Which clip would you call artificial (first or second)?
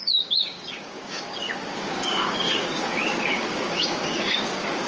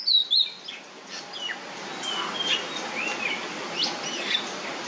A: first